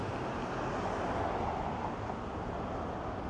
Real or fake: real